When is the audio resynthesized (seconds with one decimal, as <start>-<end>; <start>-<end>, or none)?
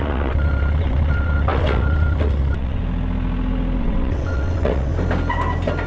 0.0-2.8; 3.8-4.9